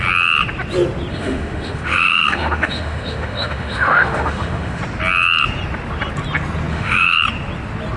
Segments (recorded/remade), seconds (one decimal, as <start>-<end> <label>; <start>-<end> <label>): 0.0-1.1 recorded; 1.1-4.8 remade; 4.8-6.7 recorded; 6.7-7.2 remade; 7.2-8.0 recorded